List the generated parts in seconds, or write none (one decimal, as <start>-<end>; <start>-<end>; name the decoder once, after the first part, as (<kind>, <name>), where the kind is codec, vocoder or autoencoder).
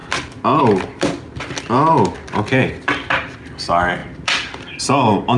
none